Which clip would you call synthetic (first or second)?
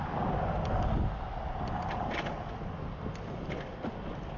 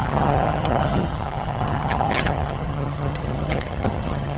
second